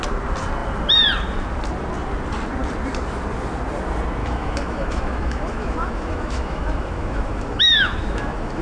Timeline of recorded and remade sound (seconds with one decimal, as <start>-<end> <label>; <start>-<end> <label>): 0.0-4.2 recorded; 4.2-8.6 remade